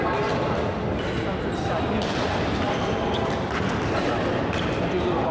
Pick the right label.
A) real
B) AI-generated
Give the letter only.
A